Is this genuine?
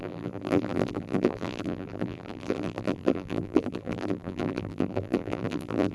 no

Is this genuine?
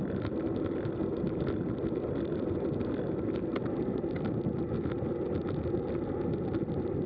yes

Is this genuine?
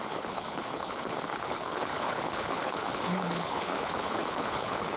no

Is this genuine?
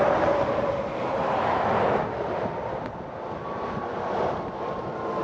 yes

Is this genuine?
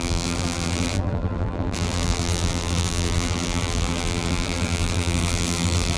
no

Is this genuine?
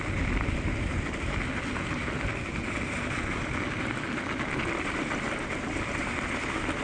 yes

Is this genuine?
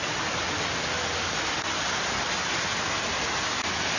yes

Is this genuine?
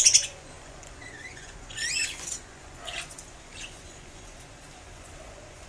no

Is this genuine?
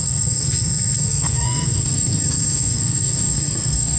no